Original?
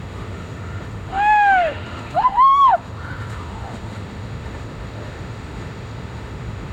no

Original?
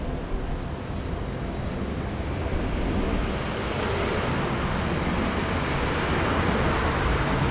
yes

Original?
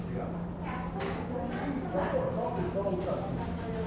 yes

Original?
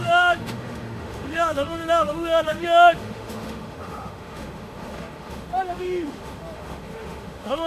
no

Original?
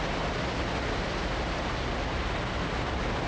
yes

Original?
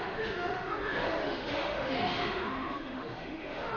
no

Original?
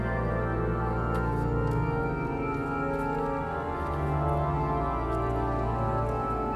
yes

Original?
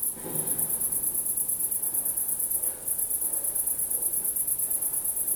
yes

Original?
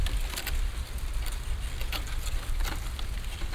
yes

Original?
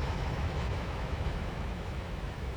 no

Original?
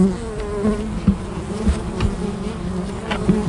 yes